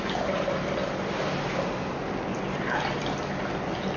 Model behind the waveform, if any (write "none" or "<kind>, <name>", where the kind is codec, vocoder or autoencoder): none